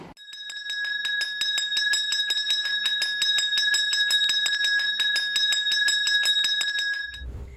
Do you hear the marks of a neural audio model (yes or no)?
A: no